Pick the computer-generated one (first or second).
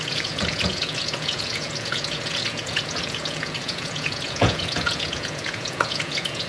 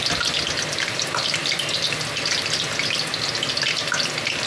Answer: first